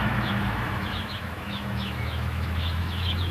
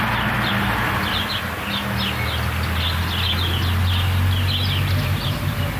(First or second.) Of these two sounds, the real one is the second